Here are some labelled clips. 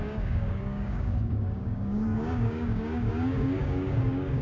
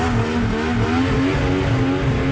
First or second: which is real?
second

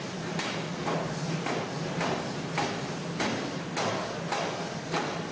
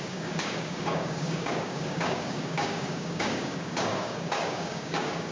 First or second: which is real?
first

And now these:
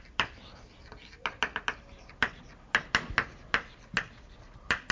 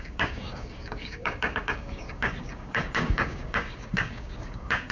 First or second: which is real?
first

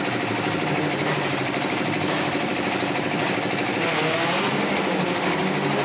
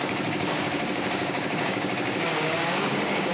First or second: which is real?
first